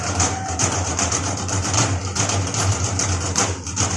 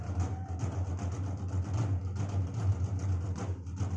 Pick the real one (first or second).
second